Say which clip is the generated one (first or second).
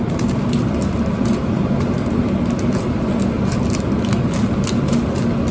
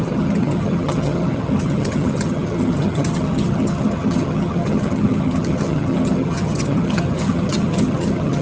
second